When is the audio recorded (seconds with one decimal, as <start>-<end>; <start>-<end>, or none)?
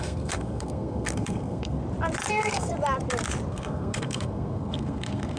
1.8-2.3; 2.7-3.5